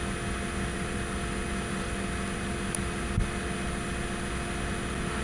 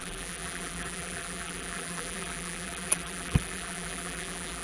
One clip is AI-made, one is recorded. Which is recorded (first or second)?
first